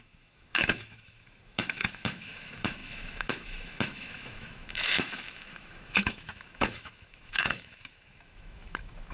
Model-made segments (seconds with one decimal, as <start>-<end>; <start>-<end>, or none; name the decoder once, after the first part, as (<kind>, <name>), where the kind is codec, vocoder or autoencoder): 0.0-9.1 (autoencoder, DAC-VAE)